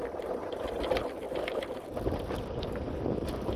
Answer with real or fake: fake